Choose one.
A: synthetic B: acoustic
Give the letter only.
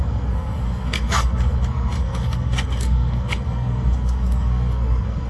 A